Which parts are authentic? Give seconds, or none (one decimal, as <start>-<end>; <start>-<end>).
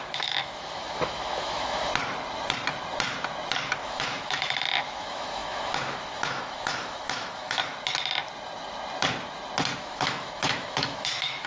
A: 1.9-3.8; 7.6-9.8